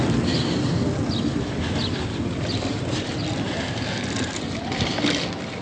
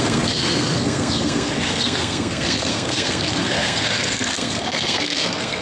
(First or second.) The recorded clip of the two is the first